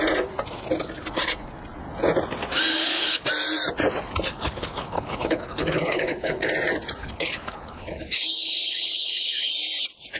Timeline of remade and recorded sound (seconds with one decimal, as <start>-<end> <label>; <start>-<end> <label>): 0.0-2.7 recorded; 2.7-3.2 remade; 3.2-4.3 recorded; 4.3-6.5 remade; 6.5-7.0 recorded; 7.0-9.5 remade; 9.5-10.2 recorded